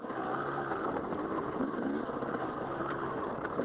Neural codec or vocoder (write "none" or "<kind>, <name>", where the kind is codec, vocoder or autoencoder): none